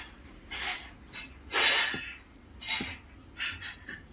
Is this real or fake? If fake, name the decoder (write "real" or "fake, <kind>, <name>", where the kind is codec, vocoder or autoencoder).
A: real